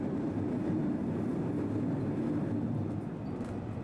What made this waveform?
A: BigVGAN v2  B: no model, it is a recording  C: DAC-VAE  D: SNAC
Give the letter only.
B